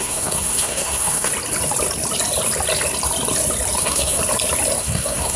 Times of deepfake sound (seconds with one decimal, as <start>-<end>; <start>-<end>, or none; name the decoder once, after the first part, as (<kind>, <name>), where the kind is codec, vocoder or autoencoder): 0.0-1.3 (codec, SNAC); 3.8-4.2; 4.8-5.4